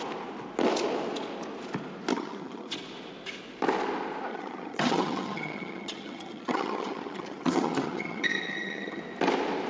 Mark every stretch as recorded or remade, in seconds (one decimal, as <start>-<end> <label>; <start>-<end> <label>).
0.0-2.1 recorded; 2.1-2.7 remade; 2.7-4.3 recorded; 4.3-9.0 remade; 9.0-9.7 recorded